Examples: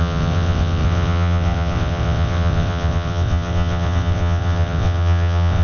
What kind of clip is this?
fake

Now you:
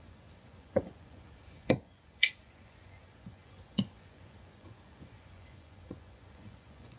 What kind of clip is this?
fake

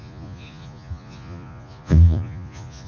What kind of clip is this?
fake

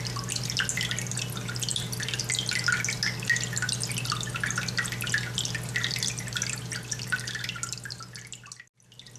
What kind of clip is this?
real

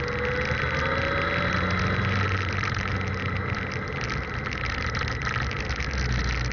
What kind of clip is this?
real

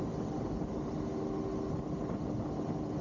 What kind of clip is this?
real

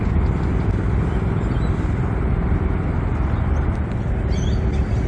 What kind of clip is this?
real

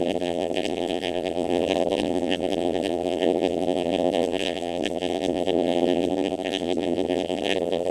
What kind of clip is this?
fake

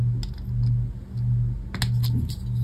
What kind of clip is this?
real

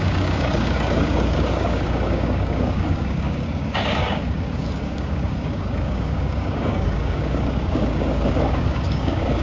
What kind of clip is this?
fake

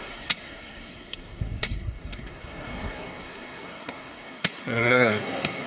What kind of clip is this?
fake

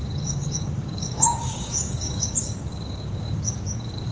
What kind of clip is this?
fake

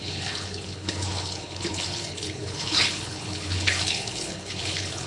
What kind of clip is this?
fake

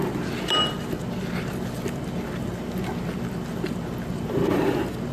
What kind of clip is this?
real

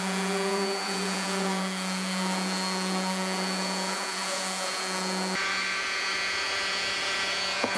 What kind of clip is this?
fake